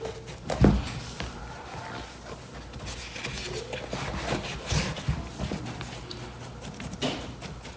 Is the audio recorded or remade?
recorded